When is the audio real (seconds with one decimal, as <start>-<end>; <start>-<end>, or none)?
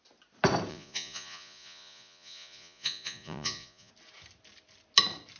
0.0-0.7; 3.9-5.4